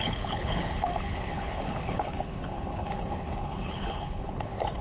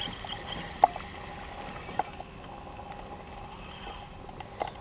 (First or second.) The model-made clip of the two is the first